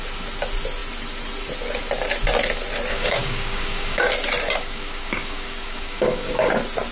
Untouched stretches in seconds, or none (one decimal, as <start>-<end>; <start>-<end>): 0.0-2.9; 4.0-4.6; 6.5-6.9